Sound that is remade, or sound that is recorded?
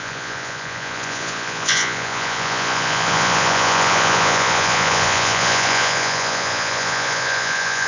remade